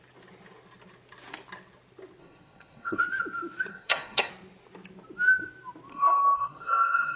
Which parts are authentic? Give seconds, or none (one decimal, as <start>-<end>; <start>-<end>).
0.0-2.2; 3.0-3.7; 4.3-5.9